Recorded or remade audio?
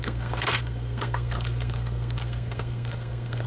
remade